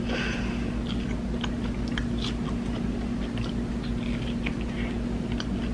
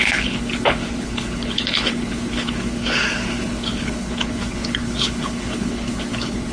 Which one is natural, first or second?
first